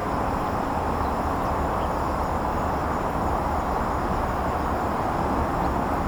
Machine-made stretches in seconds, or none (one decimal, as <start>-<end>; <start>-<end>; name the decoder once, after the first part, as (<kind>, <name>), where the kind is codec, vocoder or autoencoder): 0.0-0.8 (vocoder, BigVGAN v2); 2.8-3.4